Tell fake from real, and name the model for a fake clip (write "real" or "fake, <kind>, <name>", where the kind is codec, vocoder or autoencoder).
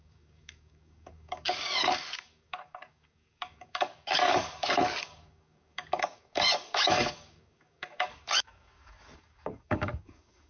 fake, codec, DAC